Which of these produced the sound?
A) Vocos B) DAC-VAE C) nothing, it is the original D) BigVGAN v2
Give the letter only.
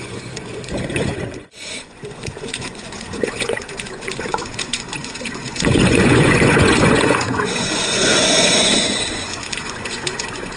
A